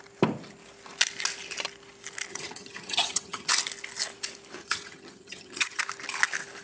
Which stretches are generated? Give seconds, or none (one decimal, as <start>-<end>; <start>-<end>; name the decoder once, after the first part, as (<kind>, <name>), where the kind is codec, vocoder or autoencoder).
2.3-3.5 (vocoder, HiFi-GAN); 4.6-5.8